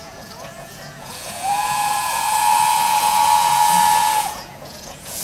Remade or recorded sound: remade